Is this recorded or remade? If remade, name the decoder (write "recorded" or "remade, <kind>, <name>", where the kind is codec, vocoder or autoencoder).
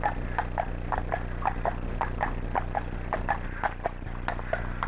recorded